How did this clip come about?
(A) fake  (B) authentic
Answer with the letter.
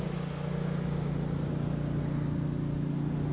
B